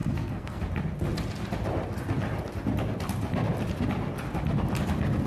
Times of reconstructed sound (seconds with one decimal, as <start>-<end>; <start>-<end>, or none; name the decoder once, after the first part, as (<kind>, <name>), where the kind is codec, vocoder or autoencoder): 0.0-0.6 (codec, SNAC)